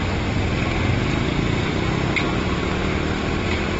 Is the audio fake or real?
real